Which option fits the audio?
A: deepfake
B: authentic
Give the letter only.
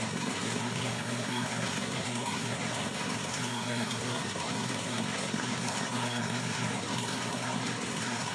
A